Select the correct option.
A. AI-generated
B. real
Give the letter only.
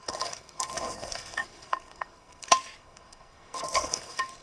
A